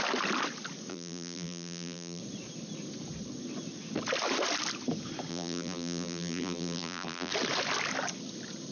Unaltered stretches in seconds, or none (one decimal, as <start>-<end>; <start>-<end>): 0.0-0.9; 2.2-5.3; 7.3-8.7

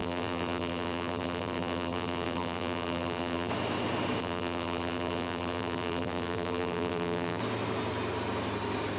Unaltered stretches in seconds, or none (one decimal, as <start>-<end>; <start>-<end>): 3.5-4.2; 7.4-9.0

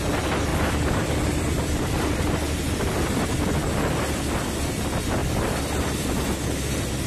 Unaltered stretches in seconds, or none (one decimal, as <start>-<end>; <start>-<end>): 0.0-0.5; 3.5-5.2; 6.1-7.1